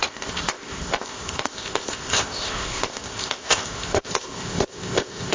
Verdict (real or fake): fake